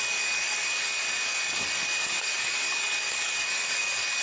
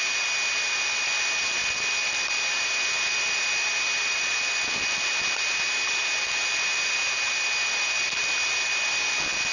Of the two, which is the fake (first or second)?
first